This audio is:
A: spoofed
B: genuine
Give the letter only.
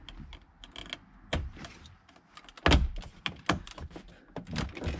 B